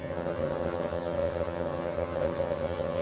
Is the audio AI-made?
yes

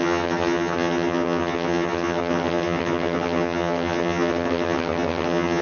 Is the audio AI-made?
yes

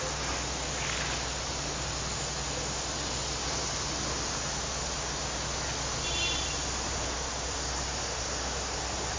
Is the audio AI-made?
no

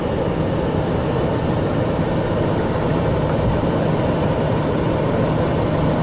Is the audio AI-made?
no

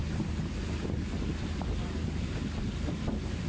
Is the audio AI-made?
no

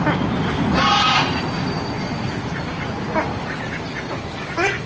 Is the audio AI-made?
no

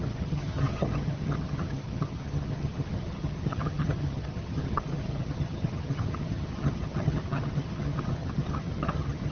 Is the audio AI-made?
yes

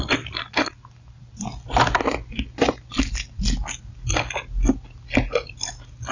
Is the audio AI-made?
no